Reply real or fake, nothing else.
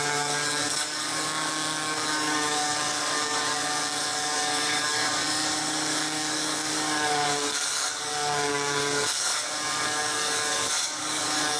fake